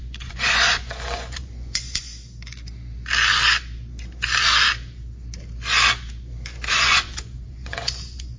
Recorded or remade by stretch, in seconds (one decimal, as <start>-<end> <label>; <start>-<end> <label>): 0.0-2.1 remade; 2.1-6.7 recorded; 6.7-8.4 remade